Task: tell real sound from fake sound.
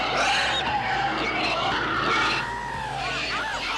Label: real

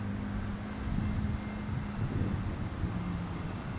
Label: fake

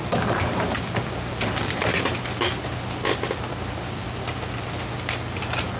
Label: real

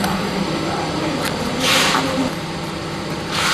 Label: fake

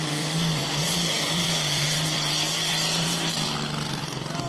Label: fake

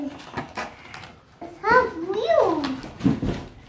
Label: real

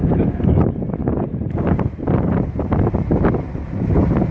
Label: fake